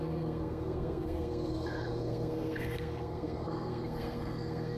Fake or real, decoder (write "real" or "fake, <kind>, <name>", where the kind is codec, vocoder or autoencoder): fake, codec, SNAC